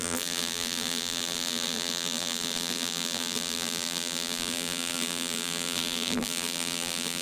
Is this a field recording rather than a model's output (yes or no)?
no